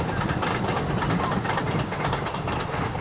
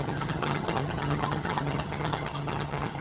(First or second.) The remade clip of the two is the second